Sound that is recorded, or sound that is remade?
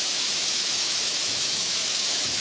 remade